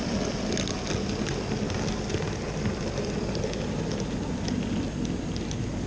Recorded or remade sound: recorded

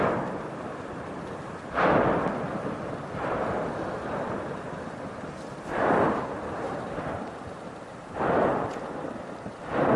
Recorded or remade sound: recorded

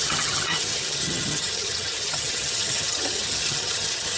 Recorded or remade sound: remade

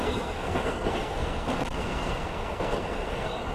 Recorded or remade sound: remade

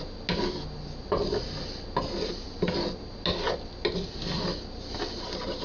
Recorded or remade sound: recorded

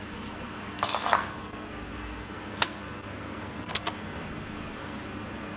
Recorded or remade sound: remade